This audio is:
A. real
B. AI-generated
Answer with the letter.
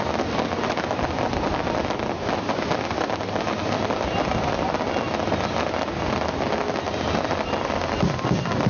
A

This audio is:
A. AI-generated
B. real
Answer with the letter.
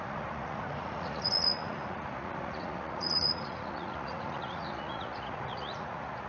A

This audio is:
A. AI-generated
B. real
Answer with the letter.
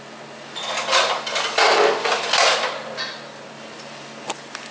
B